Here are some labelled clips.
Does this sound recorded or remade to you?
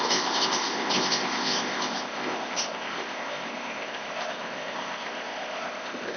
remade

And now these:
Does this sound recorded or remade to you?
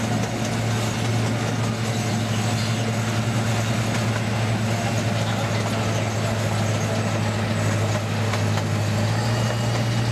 recorded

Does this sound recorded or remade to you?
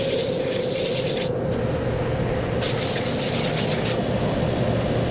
recorded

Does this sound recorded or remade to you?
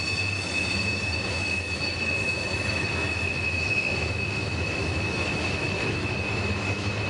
remade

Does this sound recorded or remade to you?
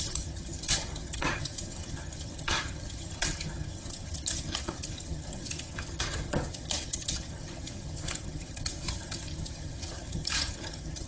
remade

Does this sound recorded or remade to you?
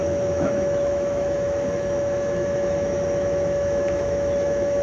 remade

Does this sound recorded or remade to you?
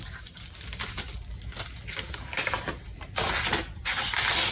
recorded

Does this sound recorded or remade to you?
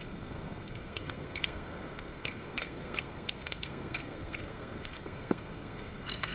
remade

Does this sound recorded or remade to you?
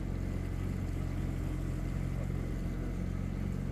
recorded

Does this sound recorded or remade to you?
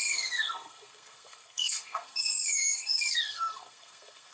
remade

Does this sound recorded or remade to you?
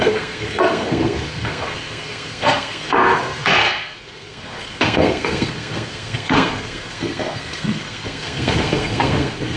remade